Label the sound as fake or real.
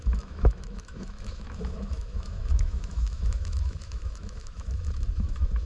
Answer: fake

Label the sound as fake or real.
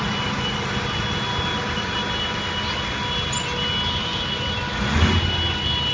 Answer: real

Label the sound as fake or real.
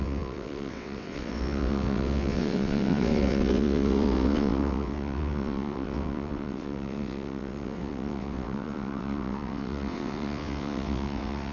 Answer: fake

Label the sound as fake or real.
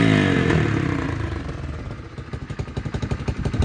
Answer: real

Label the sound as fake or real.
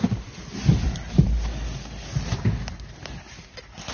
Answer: real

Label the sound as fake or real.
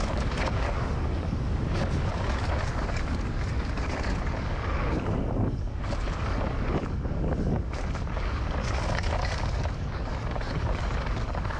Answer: fake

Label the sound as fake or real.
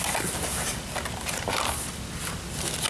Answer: real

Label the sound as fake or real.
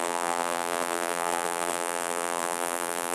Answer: fake